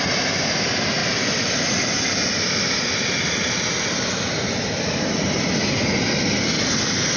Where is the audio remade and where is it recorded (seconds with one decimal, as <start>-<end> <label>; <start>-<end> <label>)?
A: 0.0-1.0 recorded; 1.0-3.6 remade; 3.6-7.2 recorded